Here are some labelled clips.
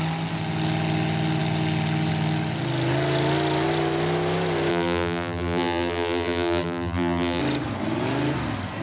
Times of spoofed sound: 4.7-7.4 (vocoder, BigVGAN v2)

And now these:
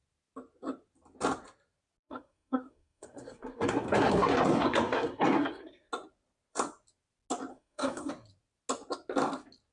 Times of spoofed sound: 2.0-5.9 (codec, SNAC); 7.5-8.1